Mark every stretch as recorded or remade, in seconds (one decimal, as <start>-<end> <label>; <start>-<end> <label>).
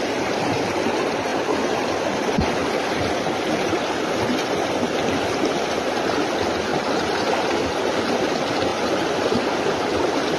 0.0-2.6 recorded; 2.6-4.0 remade; 4.0-6.7 recorded; 6.7-7.3 remade; 7.3-8.7 recorded; 8.7-9.4 remade; 9.4-10.4 recorded